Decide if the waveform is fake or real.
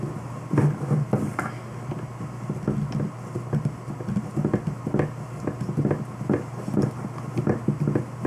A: real